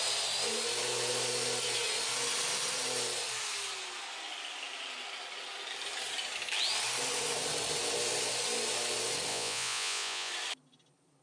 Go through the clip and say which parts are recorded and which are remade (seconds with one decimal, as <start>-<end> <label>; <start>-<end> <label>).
0.0-9.3 recorded; 9.3-10.3 remade; 10.3-11.2 recorded